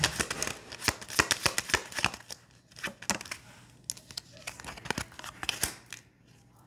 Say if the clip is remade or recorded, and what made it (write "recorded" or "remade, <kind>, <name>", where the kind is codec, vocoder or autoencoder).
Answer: recorded